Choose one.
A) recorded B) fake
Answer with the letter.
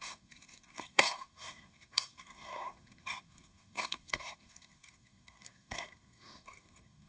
B